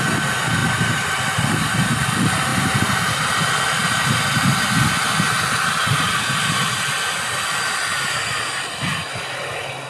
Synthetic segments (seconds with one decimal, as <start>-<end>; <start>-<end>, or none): none